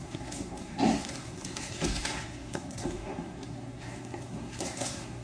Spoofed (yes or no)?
yes